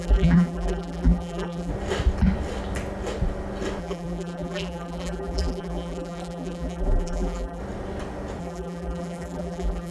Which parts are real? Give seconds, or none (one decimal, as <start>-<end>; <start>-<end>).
1.7-3.8; 7.6-8.4